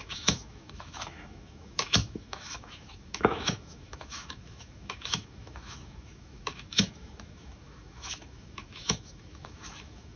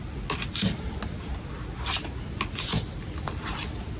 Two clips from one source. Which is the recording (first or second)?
second